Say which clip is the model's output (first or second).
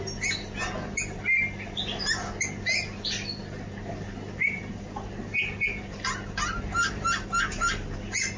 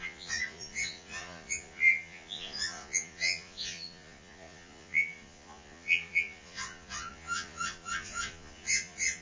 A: second